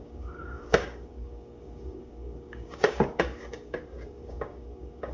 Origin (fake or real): fake